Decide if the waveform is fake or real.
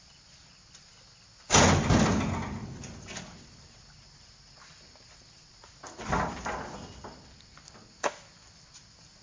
real